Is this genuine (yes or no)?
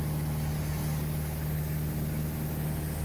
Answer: yes